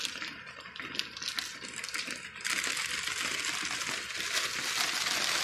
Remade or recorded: recorded